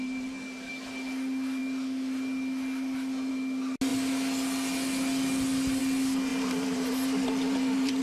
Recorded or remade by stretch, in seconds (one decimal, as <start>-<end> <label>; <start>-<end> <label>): 0.0-0.7 remade; 0.7-6.3 recorded; 6.3-8.0 remade